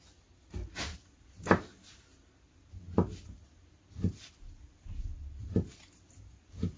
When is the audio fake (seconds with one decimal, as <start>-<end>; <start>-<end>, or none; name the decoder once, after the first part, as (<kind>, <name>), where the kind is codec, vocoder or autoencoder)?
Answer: none